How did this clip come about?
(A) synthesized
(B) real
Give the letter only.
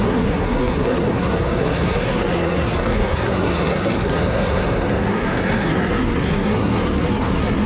A